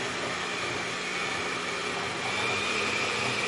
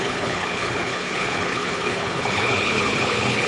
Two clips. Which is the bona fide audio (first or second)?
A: first